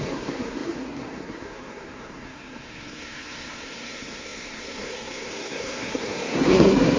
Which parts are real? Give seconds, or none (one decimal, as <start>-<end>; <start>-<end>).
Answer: none